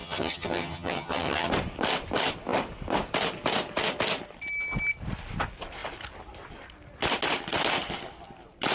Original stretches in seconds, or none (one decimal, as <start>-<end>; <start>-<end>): 1.5-8.7

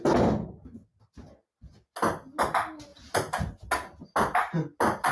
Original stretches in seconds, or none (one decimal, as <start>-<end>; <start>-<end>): 0.0-5.1

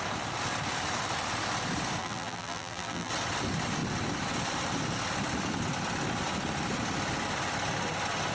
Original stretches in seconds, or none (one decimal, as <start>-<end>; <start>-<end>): 0.0-2.0; 3.1-8.3

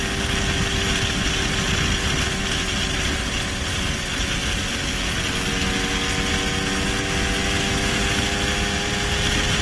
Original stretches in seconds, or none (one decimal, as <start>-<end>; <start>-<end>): 0.0-9.6